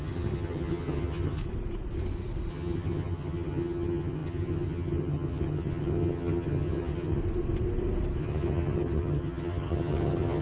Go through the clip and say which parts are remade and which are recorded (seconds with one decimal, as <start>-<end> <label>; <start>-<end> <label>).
0.0-1.4 remade; 1.4-2.5 recorded; 2.5-7.2 remade; 7.2-8.2 recorded; 8.2-10.4 remade